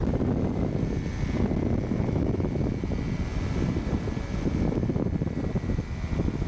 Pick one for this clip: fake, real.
fake